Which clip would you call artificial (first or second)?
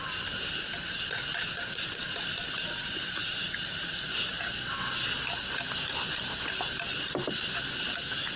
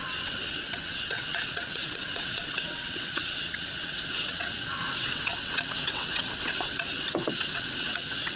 second